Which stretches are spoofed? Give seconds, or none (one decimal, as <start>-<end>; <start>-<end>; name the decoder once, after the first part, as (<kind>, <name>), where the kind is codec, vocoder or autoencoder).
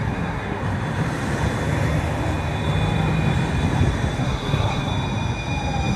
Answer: 0.0-0.6 (codec, SNAC); 4.2-4.9